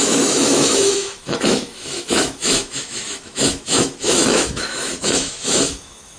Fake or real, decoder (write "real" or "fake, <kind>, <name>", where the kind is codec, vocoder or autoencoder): fake, autoencoder, DAC-VAE